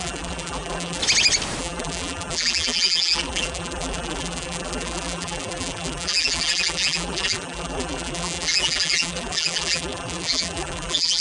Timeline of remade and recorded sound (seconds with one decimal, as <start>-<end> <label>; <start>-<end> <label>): 0.0-1.0 remade; 1.0-1.6 recorded; 1.6-11.2 remade